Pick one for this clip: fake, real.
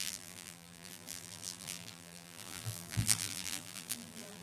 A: fake